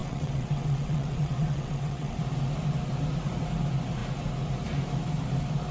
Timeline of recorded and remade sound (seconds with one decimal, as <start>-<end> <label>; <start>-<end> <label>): 0.0-2.2 remade; 2.2-5.7 recorded